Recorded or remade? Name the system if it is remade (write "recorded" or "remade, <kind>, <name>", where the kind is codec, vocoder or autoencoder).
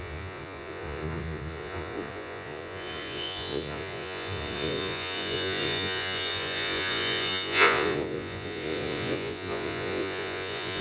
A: remade, vocoder, Vocos